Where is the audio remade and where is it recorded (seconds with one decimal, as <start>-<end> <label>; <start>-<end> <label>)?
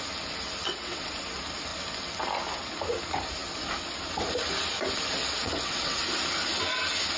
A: 0.0-0.6 recorded; 0.6-1.1 remade; 1.1-5.2 recorded; 5.2-6.0 remade; 6.0-7.2 recorded